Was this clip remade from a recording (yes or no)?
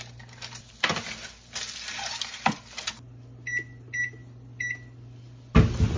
no